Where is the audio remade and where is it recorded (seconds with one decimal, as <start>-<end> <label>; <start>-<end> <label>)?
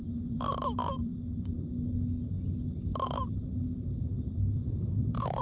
0.0-1.1 remade; 1.1-3.3 recorded; 3.3-5.4 remade